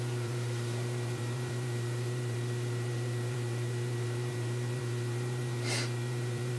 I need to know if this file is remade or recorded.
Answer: remade